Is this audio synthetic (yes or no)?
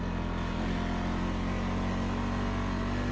no